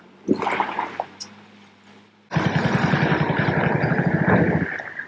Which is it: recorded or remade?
recorded